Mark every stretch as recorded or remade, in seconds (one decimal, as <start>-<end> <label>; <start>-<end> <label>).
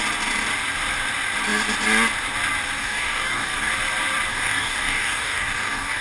0.0-2.8 recorded; 2.8-3.7 remade; 3.7-4.3 recorded; 4.3-6.0 remade